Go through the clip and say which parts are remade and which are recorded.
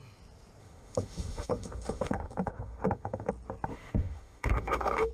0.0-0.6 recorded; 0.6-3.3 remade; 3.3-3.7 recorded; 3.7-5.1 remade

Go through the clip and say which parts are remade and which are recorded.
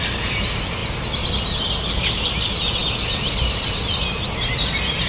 0.0-5.1 recorded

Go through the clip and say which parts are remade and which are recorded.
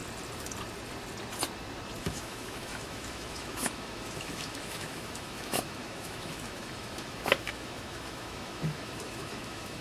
0.0-2.0 recorded; 2.0-9.8 remade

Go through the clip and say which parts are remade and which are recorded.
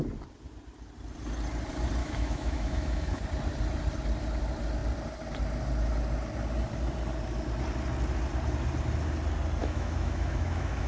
0.0-2.0 recorded; 2.0-3.2 remade; 3.2-9.6 recorded; 9.6-10.9 remade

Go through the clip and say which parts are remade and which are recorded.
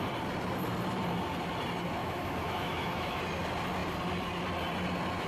0.0-2.0 recorded; 2.0-3.2 remade; 3.2-5.3 recorded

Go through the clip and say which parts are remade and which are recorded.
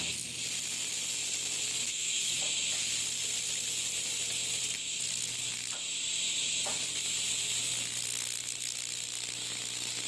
0.0-1.8 recorded; 1.8-2.4 remade; 2.4-10.1 recorded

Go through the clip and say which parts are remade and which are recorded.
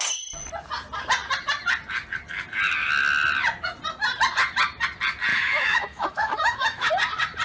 0.0-5.3 recorded; 5.3-6.9 remade; 6.9-7.4 recorded